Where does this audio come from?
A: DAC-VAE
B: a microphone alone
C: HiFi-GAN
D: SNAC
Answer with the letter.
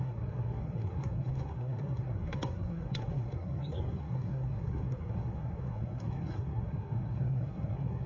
D